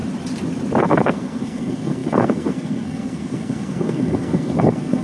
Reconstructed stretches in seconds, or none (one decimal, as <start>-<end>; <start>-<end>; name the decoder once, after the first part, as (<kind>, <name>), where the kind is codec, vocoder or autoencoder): 0.8-5.0 (codec, SNAC)